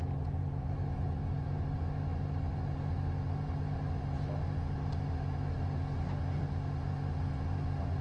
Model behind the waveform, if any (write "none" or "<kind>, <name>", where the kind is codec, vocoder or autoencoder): none